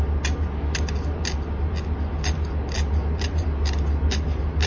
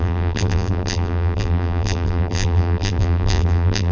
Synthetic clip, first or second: second